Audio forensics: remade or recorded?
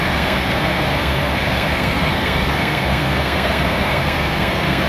remade